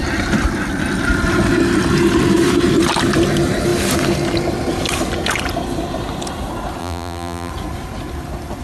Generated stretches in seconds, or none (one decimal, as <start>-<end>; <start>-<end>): 6.8-7.5